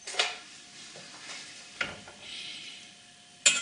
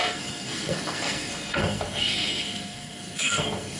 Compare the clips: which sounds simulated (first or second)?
second